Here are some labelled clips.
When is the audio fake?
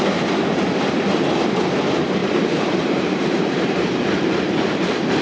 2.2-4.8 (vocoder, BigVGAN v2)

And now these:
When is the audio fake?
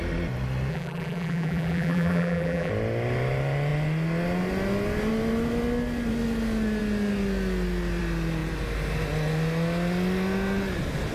0.7-2.7 (vocoder, BigVGAN v2)